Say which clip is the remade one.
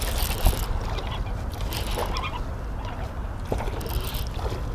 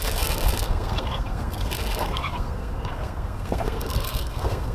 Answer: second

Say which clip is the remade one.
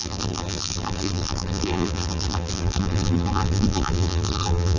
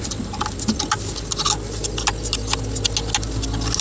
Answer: first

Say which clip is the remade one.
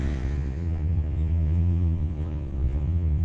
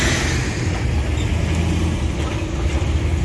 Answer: first